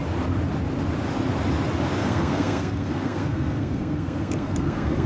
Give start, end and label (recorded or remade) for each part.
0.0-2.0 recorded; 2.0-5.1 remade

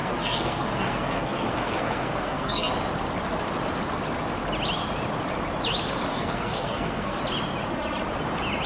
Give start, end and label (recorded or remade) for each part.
0.0-2.7 remade; 2.7-6.1 recorded; 6.1-7.2 remade; 7.2-8.7 recorded